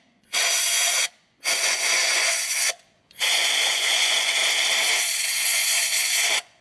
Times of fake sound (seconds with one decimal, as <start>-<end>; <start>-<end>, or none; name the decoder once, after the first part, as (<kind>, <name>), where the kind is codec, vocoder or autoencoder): 0.0-4.4 (vocoder, Vocos); 5.2-6.6